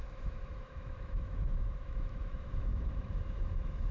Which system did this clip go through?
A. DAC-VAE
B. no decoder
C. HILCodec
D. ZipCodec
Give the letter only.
A